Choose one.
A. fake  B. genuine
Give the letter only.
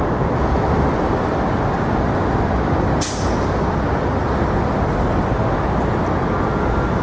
B